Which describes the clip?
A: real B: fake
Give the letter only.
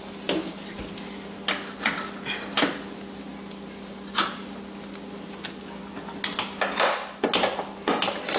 A